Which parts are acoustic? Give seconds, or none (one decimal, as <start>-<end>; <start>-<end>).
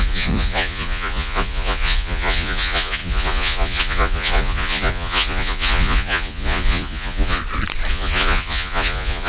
7.4-7.9